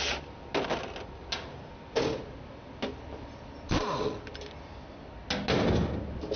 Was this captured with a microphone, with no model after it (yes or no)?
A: yes